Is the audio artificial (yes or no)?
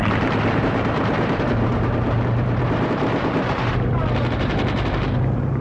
yes